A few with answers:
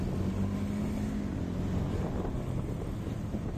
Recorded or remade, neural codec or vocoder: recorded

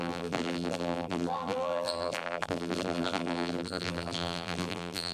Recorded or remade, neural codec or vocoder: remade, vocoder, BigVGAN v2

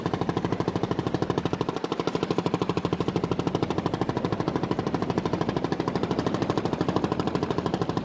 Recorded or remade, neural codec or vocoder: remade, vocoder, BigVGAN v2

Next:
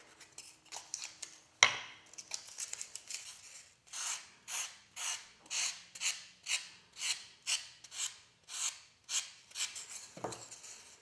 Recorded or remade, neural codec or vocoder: recorded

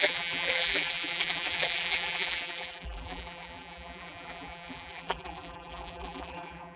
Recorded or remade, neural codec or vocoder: remade, vocoder, BigVGAN v2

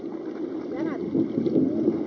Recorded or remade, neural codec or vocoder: recorded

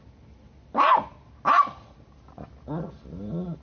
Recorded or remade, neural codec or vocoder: recorded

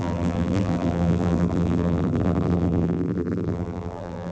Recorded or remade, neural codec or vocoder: remade, vocoder, BigVGAN v2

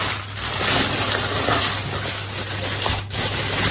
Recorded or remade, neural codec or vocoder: recorded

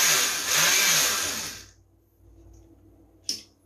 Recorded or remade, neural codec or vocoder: recorded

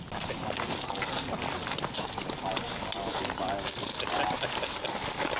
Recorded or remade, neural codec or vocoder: recorded